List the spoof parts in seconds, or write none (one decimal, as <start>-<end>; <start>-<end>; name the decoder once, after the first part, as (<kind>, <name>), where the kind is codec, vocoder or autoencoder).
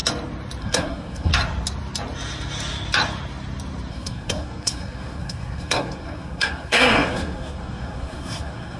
0.6-1.3 (codec, SNAC); 3.9-8.8